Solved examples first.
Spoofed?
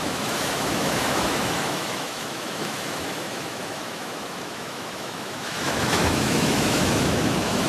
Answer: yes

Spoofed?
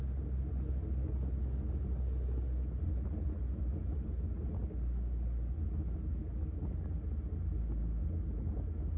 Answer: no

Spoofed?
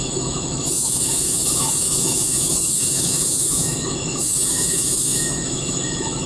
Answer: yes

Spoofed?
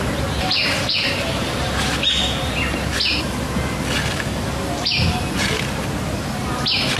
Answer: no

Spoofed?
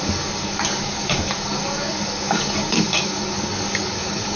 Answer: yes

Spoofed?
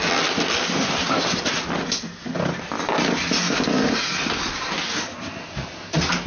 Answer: no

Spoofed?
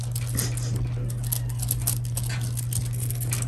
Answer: no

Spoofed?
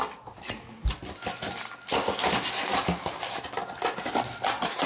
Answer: no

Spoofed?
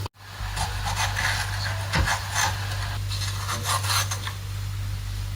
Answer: no